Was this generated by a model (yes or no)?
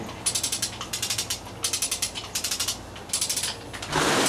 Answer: no